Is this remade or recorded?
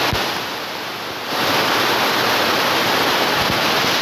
recorded